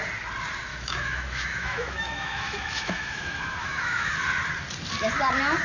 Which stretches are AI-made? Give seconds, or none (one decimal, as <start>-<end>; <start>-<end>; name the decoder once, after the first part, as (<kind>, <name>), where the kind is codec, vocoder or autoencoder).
0.7-4.1 (autoencoder, DAC-VAE)